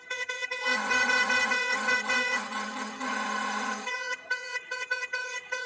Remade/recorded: remade